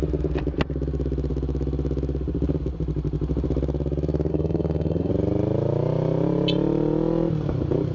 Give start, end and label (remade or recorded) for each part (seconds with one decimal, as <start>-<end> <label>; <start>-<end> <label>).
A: 0.0-4.3 recorded; 4.3-5.1 remade; 5.1-7.9 recorded